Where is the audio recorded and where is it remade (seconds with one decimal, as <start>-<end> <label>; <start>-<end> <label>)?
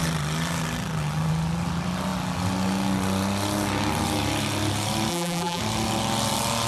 0.0-5.1 recorded; 5.1-5.6 remade; 5.6-6.7 recorded